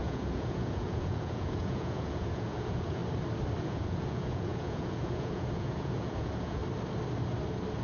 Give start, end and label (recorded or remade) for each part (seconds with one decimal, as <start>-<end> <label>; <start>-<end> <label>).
0.0-3.0 remade; 3.0-3.6 recorded; 3.6-6.6 remade; 6.6-7.8 recorded